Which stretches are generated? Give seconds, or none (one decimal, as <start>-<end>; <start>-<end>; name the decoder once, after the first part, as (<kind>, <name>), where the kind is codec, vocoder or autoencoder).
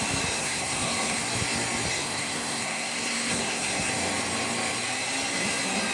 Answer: 0.4-1.2 (codec, SNAC); 1.9-3.9